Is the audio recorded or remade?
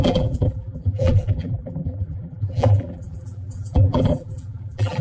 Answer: remade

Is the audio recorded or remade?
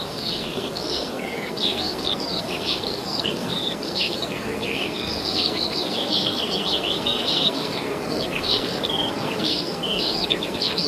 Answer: remade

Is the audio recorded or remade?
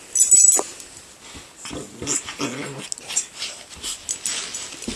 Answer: recorded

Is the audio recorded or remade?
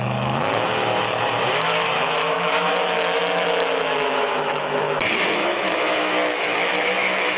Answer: remade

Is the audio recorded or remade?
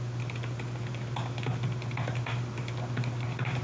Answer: recorded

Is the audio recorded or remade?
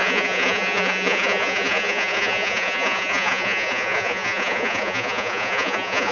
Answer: remade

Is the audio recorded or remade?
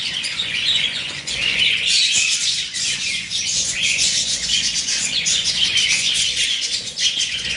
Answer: remade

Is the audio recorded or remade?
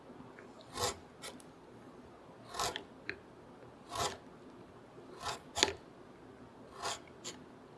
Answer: recorded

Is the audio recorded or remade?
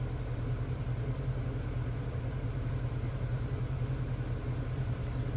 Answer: remade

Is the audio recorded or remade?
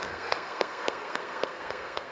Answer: remade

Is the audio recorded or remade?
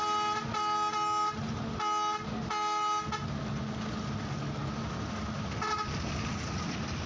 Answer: recorded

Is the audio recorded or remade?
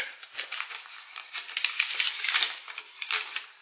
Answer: recorded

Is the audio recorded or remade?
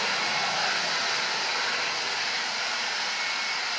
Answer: recorded